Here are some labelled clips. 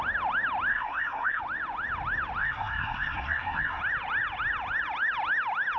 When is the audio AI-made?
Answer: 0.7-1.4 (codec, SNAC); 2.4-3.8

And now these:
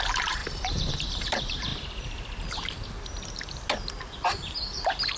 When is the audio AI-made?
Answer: 0.0-1.7 (vocoder, BigVGAN v2); 4.8-5.2

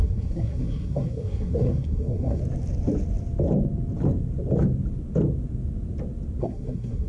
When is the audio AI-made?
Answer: 0.0-2.4 (codec, SNAC); 6.4-7.1

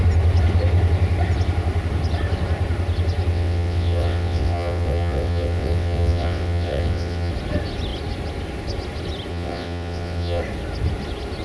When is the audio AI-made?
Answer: 3.3-7.3 (vocoder, WaveNeXt); 9.3-10.4

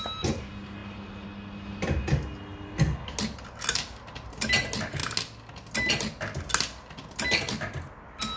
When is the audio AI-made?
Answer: none

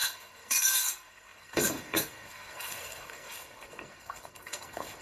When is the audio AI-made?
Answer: 0.0-5.0 (codec, SNAC)

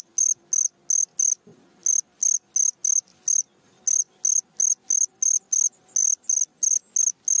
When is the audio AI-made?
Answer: none

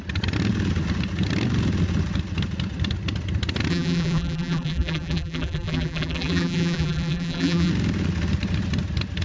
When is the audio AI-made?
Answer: 3.7-7.7 (vocoder, BigVGAN v2)